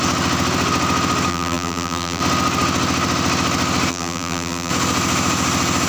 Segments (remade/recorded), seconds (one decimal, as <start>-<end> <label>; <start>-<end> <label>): 0.0-1.3 recorded; 1.3-2.2 remade; 2.2-3.9 recorded; 3.9-4.7 remade; 4.7-5.9 recorded